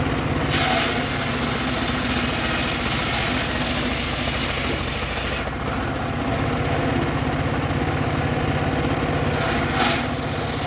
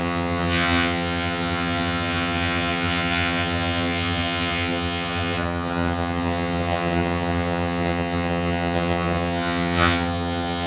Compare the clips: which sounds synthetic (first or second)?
second